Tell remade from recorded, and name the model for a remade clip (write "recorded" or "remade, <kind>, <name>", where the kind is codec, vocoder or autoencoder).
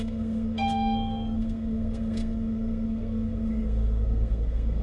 remade, codec, SNAC